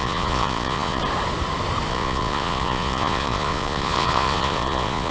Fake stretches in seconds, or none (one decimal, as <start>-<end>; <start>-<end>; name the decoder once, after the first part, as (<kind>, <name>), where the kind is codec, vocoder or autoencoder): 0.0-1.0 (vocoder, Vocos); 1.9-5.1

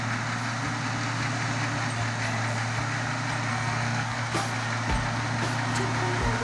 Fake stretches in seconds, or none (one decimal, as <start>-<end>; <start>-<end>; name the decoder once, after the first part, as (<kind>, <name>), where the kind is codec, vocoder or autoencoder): 3.5-4.2 (codec, SNAC)

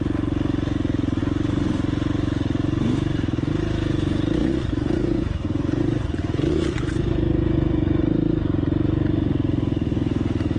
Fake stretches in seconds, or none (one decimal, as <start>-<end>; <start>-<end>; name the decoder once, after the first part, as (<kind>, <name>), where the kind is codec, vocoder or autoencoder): 4.4-8.0 (vocoder, Vocos)